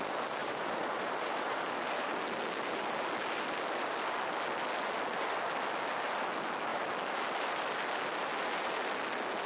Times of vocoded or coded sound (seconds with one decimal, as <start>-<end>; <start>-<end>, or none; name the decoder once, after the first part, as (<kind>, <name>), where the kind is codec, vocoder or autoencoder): 0.4-1.6 (vocoder, BigVGAN v2)